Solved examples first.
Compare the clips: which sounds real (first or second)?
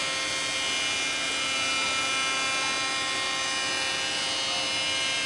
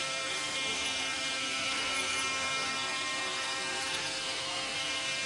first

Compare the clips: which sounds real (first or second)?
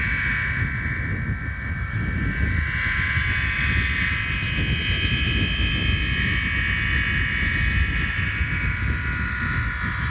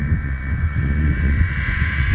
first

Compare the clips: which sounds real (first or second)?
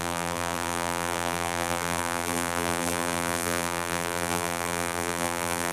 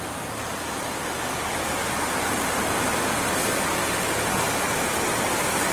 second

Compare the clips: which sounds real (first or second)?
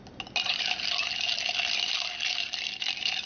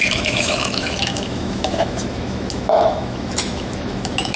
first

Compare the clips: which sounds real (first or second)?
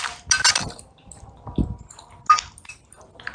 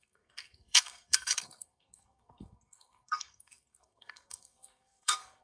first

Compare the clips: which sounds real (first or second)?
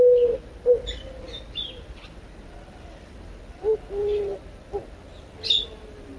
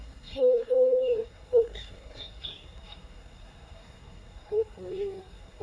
first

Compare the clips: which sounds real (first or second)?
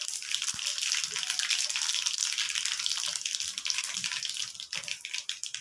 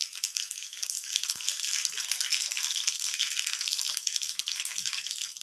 first